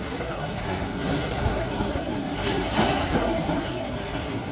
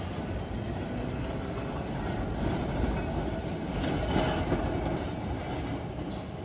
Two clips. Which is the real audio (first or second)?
second